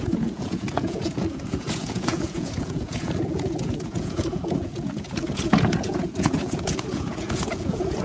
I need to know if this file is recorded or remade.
remade